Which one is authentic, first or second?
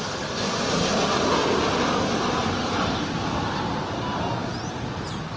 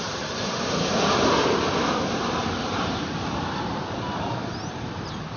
first